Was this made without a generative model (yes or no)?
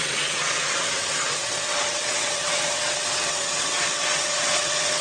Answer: no